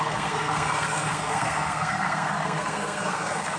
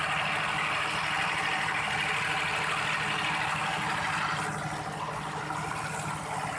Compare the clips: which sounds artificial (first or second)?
first